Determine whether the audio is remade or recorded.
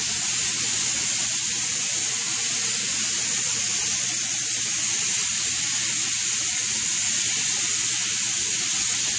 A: recorded